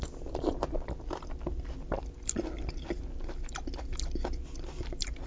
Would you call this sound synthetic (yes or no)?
no